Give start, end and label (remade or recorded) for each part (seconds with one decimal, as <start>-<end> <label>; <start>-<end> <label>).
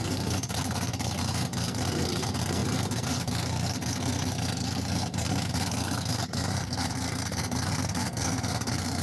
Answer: 0.0-9.0 remade